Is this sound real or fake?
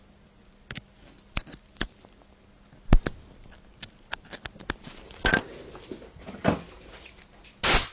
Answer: real